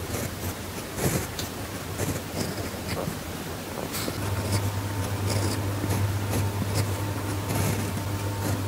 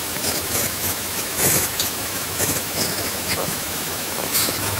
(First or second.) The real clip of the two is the first